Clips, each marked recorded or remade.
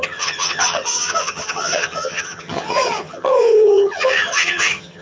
remade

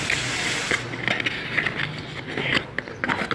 recorded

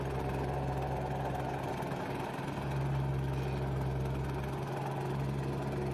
recorded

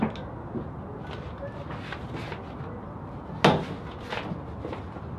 recorded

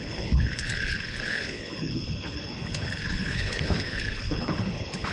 remade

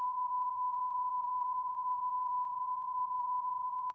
remade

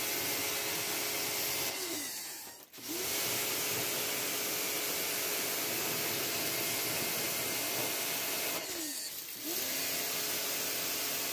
recorded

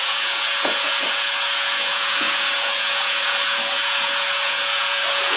remade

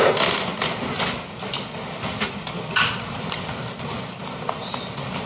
recorded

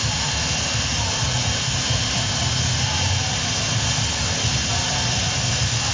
recorded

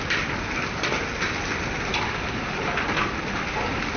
recorded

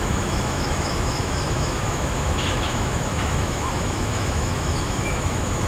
remade